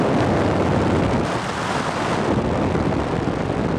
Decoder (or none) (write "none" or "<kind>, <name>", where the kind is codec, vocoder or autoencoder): none